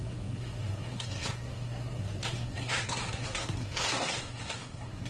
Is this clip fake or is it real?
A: fake